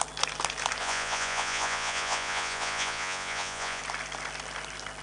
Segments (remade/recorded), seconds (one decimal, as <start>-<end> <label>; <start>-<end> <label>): 0.0-0.8 recorded; 0.8-3.8 remade; 3.8-5.0 recorded